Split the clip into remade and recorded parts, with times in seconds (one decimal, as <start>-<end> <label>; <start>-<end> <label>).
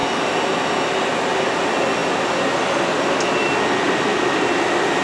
0.0-5.0 recorded